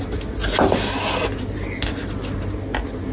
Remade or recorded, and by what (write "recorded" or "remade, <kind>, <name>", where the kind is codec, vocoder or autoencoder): recorded